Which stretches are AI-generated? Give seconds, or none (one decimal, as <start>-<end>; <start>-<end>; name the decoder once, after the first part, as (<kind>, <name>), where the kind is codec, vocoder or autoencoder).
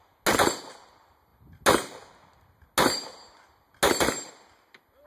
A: none